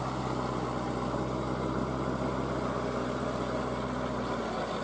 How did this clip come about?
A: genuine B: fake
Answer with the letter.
A